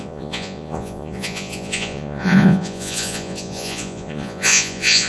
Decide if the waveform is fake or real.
fake